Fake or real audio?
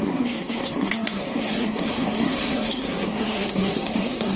fake